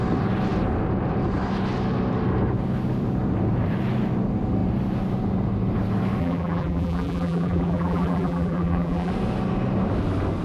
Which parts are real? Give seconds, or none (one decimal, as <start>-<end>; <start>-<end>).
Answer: 0.0-6.2; 9.1-10.4